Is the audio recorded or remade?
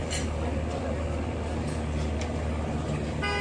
recorded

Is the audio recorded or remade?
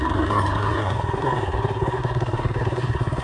remade